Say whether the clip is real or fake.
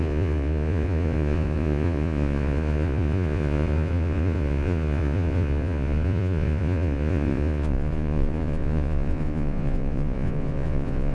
fake